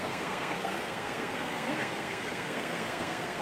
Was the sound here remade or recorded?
remade